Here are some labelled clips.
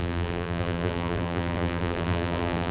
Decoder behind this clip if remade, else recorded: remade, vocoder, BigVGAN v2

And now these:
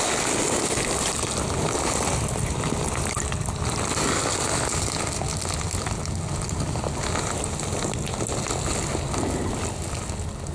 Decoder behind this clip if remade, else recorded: recorded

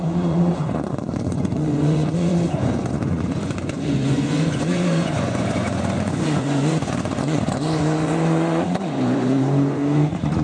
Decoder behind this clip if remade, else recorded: remade, vocoder, Vocos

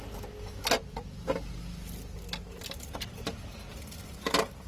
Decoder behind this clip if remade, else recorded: recorded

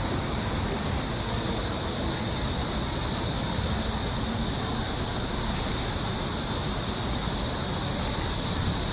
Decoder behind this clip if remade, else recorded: recorded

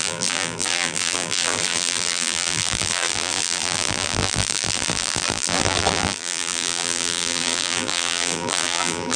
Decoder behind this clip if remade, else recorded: remade, vocoder, BigVGAN v2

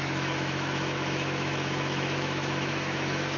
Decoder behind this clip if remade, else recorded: remade, autoencoder, DAC-VAE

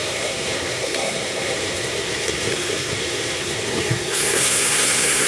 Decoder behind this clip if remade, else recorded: remade, codec, SNAC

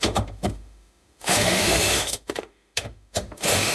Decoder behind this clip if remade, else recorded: remade, autoencoder, DAC-VAE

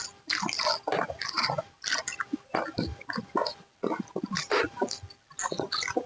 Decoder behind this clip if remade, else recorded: recorded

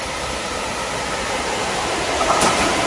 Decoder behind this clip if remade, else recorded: remade, vocoder, BigVGAN v2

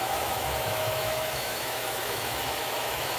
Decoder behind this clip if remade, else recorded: remade, autoencoder, DAC-VAE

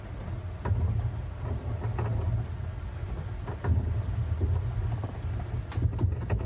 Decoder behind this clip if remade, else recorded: recorded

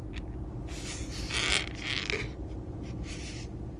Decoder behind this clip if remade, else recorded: recorded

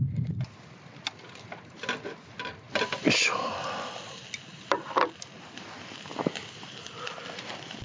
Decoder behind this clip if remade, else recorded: recorded